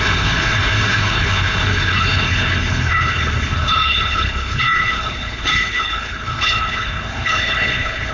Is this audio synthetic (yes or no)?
yes